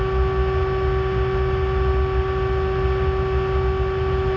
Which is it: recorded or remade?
recorded